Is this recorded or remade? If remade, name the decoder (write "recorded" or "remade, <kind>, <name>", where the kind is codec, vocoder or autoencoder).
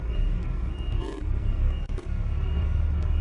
remade, codec, SNAC